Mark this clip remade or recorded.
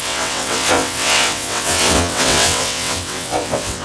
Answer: remade